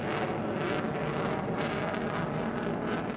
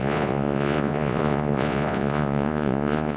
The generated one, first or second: second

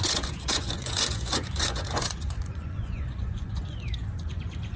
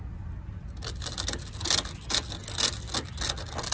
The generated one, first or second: first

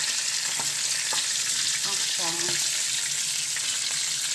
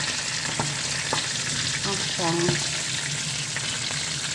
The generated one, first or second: first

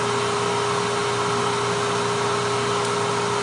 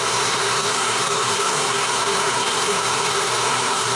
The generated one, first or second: second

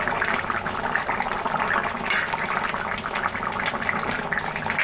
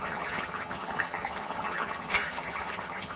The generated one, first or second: second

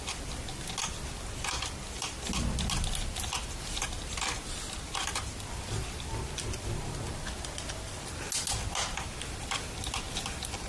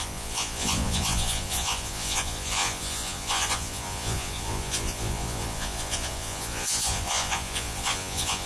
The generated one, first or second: second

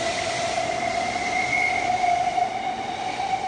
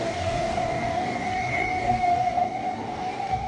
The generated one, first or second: second